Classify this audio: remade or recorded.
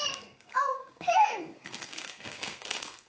remade